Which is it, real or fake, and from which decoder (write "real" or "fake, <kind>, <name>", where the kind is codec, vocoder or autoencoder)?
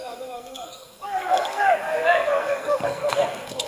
fake, codec, SNAC